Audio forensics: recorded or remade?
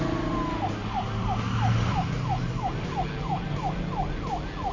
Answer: recorded